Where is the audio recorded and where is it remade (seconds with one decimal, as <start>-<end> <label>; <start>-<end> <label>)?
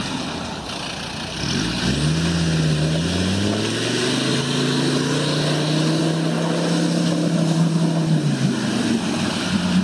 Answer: 0.0-9.8 recorded